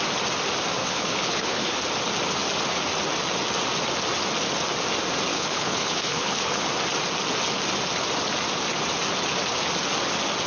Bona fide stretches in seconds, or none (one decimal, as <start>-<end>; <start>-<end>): 0.0-0.8; 1.8-5.3; 6.7-10.5